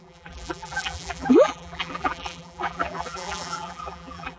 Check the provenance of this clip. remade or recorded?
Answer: remade